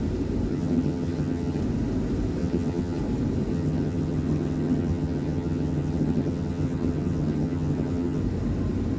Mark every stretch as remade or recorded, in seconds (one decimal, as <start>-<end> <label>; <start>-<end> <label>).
0.0-0.5 recorded; 0.5-1.6 remade; 1.6-2.4 recorded; 2.4-3.0 remade; 3.0-3.5 recorded; 3.5-8.2 remade; 8.2-9.0 recorded